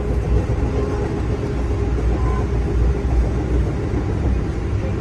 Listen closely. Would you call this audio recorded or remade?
recorded